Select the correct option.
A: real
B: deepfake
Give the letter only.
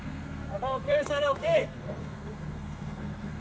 B